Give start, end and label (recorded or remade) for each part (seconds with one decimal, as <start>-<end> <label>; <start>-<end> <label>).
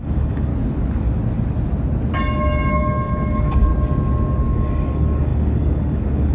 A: 0.0-0.5 remade; 0.5-2.7 recorded; 2.7-3.7 remade; 3.7-4.3 recorded; 4.3-6.3 remade